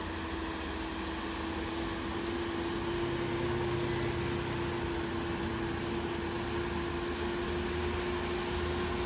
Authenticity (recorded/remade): recorded